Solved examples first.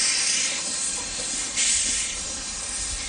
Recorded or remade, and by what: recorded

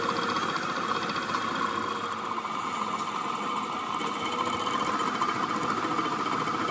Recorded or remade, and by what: recorded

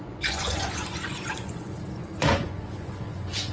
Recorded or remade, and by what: remade, vocoder, Vocos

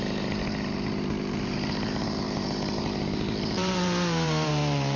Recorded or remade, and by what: remade, vocoder, BigVGAN v2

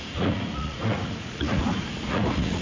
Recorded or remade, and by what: remade, vocoder, Vocos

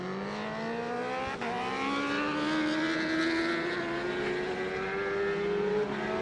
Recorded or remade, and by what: recorded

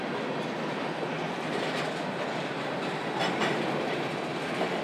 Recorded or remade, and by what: recorded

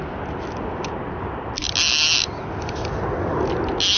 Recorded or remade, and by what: recorded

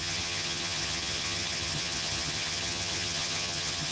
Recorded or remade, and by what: remade, vocoder, HiFi-GAN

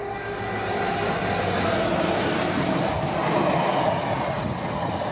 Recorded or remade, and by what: recorded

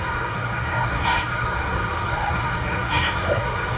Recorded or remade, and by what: remade, codec, SNAC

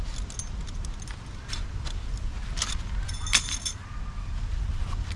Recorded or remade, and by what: recorded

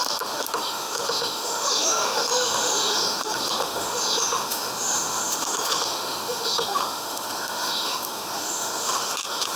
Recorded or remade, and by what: remade, autoencoder, DAC-VAE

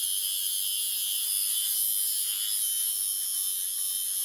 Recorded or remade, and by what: recorded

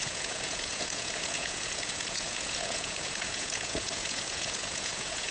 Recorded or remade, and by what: remade, vocoder, Vocos